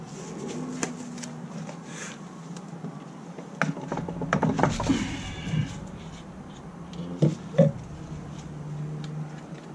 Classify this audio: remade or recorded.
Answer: recorded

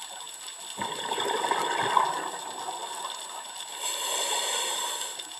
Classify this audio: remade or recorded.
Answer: recorded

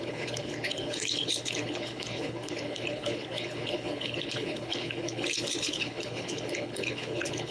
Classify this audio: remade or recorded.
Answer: remade